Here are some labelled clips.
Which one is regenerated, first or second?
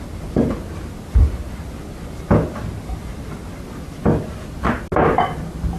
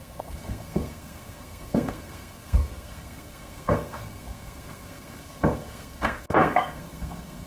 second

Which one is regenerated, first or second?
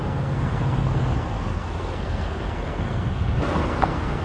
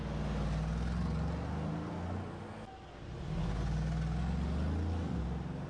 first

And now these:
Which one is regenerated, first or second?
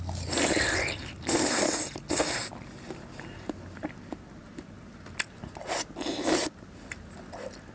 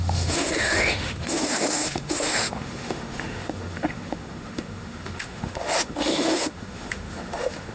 second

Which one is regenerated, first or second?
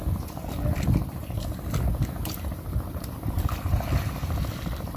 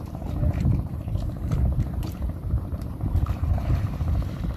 second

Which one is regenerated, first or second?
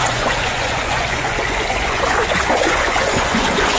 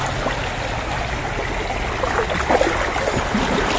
first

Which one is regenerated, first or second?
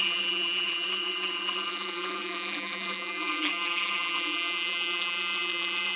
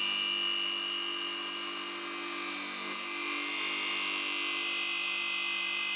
first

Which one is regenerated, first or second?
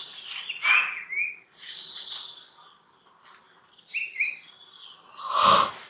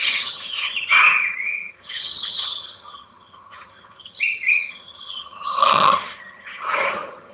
second